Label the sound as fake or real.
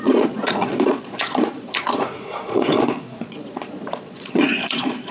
fake